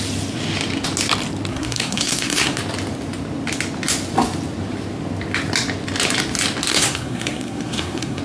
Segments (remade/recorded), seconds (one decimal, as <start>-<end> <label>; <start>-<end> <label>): 0.0-1.5 recorded; 1.5-2.6 remade; 2.6-6.7 recorded; 6.7-8.2 remade